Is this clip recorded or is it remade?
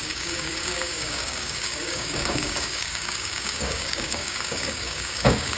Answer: remade